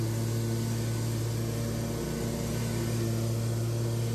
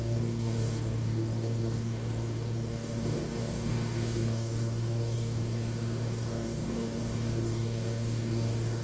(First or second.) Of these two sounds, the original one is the first